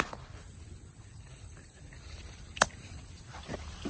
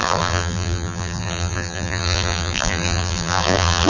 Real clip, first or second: first